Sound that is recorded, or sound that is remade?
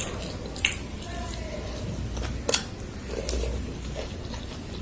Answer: recorded